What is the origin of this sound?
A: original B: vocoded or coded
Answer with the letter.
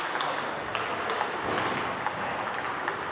A